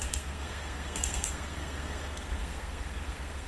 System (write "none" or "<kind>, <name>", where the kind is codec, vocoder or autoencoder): codec, SNAC